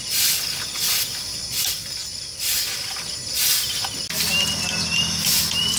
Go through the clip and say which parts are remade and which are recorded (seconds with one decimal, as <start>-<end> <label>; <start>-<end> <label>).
0.0-5.8 recorded